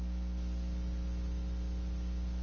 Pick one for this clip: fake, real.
real